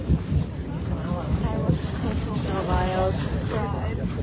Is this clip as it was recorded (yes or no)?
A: no